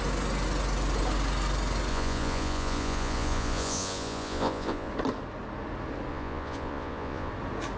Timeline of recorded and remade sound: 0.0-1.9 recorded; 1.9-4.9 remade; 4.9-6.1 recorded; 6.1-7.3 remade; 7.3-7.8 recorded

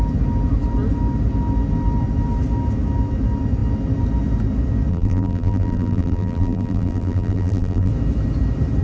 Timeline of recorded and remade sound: 0.0-4.9 recorded; 4.9-7.9 remade; 7.9-8.8 recorded

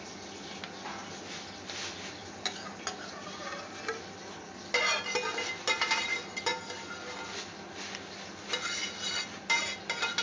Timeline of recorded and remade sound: 0.0-10.2 recorded

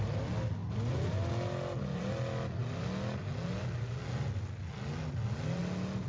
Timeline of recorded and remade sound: 0.0-6.1 recorded

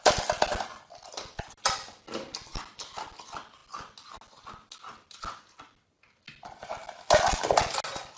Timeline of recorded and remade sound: 0.0-8.2 recorded

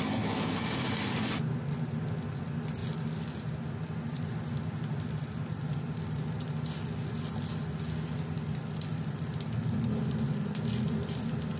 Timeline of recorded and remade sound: 0.0-11.6 recorded